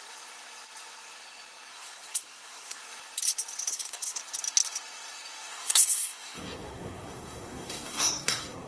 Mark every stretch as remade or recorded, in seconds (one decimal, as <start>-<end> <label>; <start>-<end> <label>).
0.0-1.7 recorded; 1.7-2.8 remade; 2.8-3.7 recorded; 3.7-4.2 remade; 4.2-5.5 recorded; 5.5-8.7 remade